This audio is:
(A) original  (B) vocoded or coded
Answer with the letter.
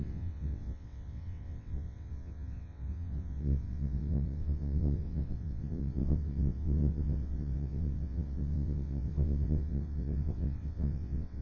B